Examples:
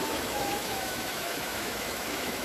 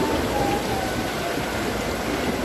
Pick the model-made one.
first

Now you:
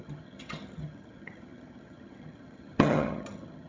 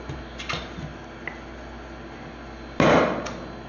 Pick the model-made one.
first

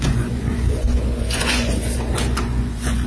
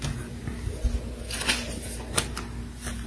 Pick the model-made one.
first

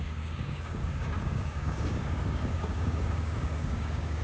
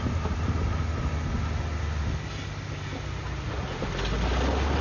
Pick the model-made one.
first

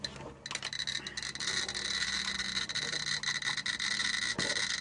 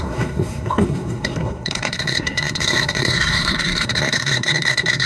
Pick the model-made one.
second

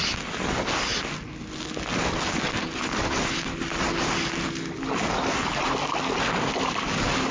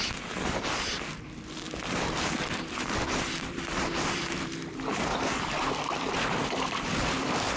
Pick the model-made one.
second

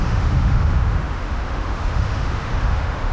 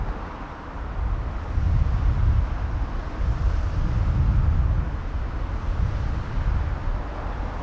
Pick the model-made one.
first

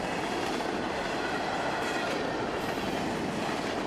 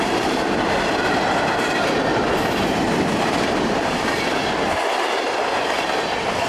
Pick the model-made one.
second